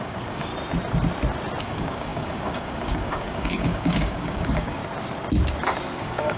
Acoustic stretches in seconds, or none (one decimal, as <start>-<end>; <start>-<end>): 0.5-1.6; 4.8-6.0